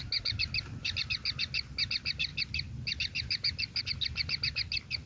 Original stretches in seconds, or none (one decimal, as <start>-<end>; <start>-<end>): 0.0-5.1